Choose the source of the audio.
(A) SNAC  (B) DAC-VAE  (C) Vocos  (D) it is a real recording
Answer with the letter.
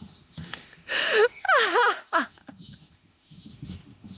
B